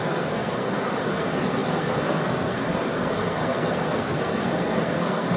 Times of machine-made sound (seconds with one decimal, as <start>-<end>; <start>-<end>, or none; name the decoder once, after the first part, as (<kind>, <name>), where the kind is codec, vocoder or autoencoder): 0.0-5.4 (codec, SNAC)